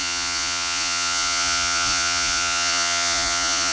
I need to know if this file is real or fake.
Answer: fake